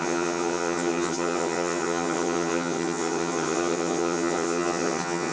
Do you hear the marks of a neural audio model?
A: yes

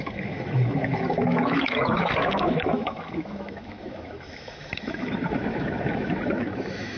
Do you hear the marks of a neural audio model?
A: yes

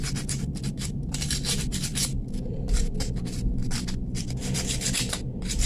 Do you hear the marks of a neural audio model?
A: yes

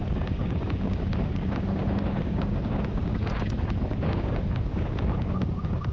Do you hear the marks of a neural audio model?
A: yes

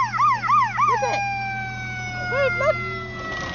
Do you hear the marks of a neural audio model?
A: no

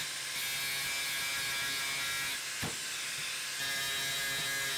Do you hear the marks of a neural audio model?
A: no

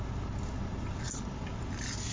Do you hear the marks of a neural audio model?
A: no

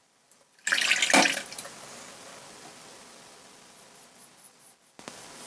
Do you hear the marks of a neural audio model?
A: no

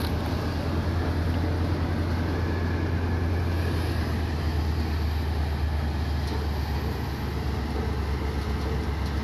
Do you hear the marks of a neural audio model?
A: no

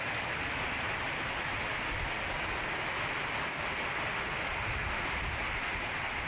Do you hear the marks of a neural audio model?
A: no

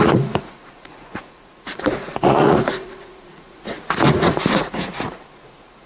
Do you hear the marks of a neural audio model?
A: yes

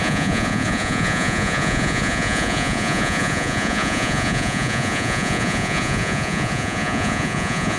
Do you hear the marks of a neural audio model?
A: yes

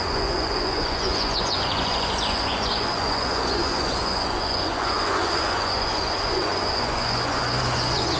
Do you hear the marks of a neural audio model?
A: yes